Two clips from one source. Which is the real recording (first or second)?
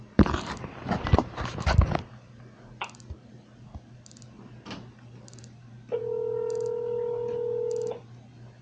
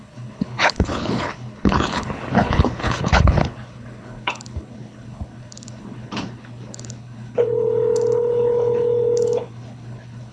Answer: first